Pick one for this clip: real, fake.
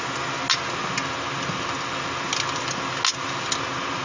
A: real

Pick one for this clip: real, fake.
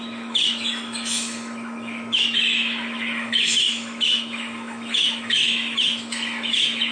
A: fake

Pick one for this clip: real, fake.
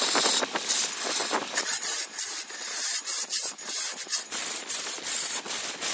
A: real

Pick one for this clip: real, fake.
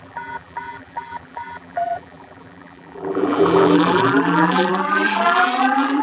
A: fake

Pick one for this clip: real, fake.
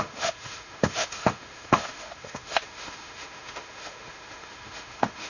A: fake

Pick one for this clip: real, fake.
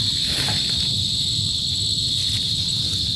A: real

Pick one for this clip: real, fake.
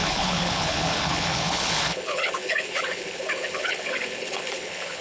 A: fake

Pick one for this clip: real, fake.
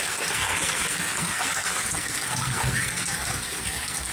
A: fake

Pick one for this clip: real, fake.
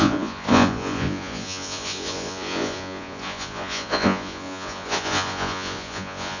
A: fake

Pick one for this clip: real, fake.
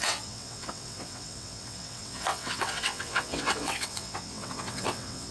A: fake